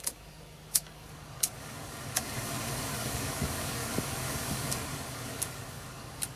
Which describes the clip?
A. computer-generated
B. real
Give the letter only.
A